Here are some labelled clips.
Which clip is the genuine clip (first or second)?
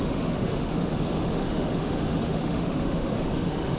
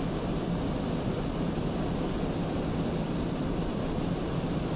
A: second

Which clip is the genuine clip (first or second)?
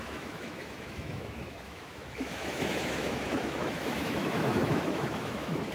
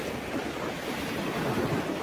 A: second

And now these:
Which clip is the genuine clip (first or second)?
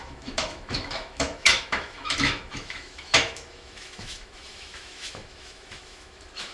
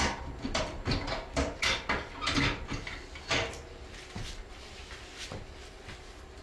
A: second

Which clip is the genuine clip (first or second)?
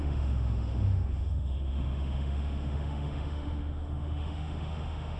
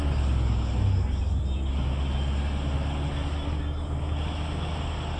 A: second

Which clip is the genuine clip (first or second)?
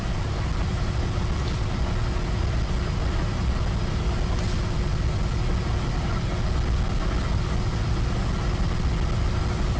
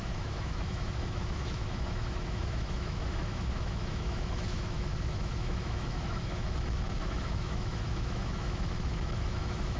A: first